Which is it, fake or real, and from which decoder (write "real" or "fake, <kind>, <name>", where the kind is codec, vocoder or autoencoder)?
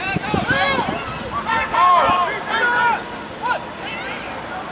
real